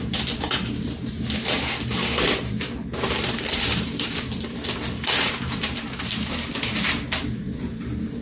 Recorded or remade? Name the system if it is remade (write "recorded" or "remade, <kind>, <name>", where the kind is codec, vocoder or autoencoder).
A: remade, vocoder, BigVGAN v2